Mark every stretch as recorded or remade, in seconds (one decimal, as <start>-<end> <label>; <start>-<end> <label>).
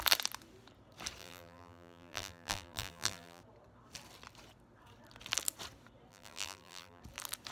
0.0-1.2 recorded; 1.2-3.4 remade; 3.4-6.1 recorded; 6.1-7.0 remade; 7.0-7.5 recorded